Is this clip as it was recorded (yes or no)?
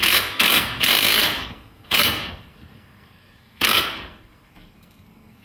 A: no